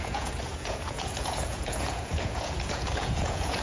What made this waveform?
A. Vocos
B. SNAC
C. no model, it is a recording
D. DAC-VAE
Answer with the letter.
A